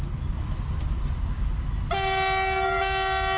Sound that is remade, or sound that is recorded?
recorded